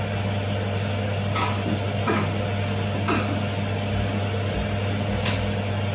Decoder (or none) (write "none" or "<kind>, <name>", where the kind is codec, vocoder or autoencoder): none